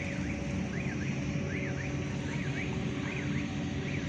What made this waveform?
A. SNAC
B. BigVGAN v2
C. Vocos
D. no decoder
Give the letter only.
D